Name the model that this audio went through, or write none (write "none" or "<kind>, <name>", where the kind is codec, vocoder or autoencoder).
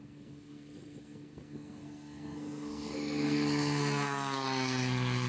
codec, SNAC